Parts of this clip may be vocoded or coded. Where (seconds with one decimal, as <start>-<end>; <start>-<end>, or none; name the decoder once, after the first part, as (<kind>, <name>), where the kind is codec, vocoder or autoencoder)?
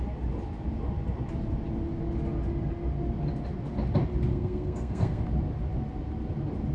4.3-5.2 (codec, SNAC)